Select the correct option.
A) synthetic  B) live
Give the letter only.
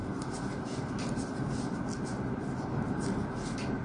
B